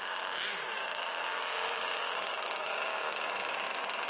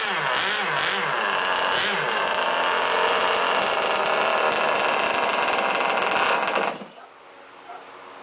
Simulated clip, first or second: first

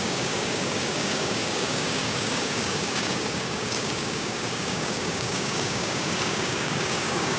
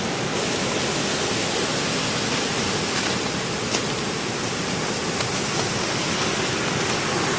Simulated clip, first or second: first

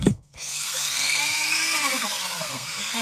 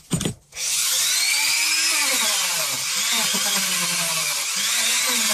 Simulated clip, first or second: first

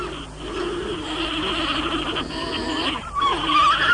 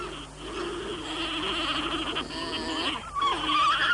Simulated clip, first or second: first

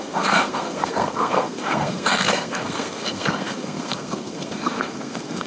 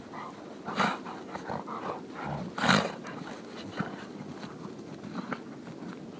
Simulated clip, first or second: first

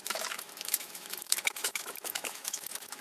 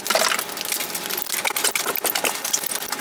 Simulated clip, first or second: first